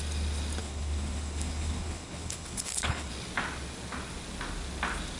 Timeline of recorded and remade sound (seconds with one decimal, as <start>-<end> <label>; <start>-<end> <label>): 0.0-0.6 recorded; 0.6-3.1 remade; 3.1-5.2 recorded